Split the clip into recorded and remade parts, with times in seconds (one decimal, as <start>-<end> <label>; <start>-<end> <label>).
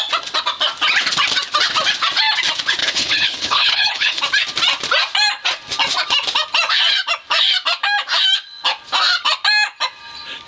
0.0-2.8 recorded; 2.8-4.2 remade; 4.2-10.5 recorded